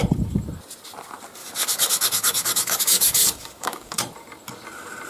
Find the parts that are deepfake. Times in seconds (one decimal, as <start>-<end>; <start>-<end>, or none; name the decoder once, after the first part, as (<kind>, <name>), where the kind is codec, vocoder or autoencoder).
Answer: 1.4-4.0 (codec, DAC)